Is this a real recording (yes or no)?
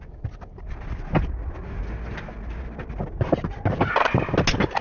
yes